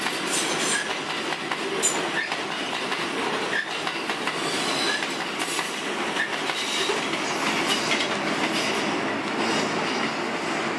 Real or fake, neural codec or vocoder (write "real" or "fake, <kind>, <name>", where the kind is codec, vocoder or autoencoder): real